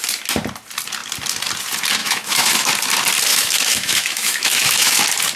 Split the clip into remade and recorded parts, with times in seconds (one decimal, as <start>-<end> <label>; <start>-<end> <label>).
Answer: 0.0-2.0 recorded; 2.0-2.7 remade; 2.7-3.3 recorded; 3.3-5.0 remade; 5.0-5.4 recorded